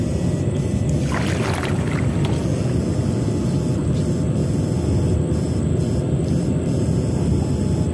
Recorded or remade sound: recorded